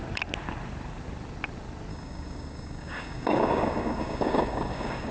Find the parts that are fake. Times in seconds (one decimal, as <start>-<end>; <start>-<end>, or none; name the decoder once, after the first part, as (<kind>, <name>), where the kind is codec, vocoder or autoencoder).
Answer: 1.9-5.1 (codec, DAC)